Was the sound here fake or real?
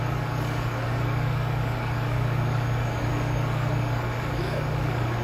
fake